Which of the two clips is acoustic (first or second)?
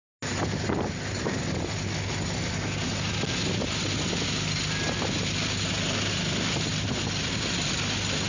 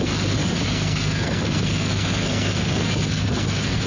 first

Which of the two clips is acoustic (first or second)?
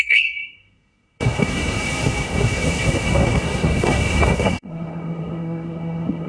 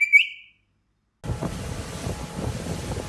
second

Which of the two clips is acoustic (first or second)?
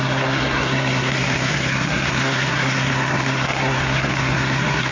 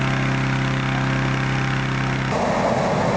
second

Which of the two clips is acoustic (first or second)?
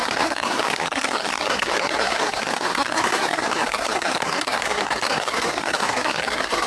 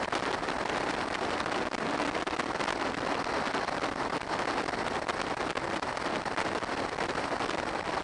second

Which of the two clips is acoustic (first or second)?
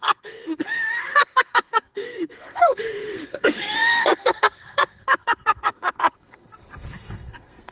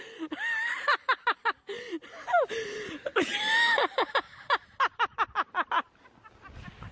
second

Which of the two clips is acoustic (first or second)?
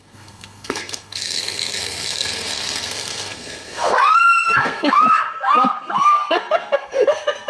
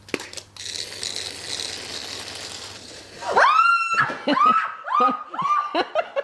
second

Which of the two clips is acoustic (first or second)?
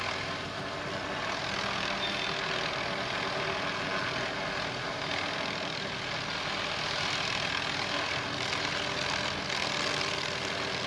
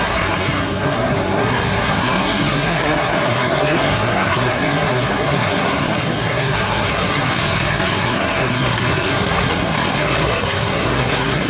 first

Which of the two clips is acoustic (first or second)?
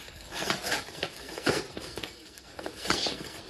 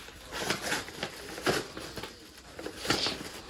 second